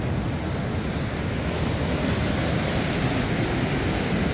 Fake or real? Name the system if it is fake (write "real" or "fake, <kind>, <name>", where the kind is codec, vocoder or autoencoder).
real